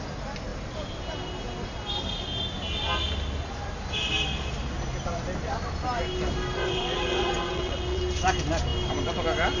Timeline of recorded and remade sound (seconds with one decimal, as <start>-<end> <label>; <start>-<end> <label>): 0.0-6.6 recorded; 6.6-8.0 remade; 8.0-9.6 recorded